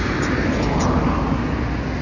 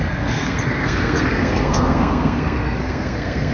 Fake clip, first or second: second